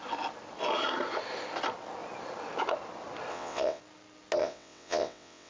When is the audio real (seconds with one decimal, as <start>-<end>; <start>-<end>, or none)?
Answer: 0.0-3.3; 3.8-4.4